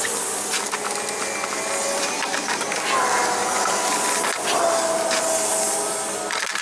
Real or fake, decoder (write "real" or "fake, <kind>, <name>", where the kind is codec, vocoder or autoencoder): real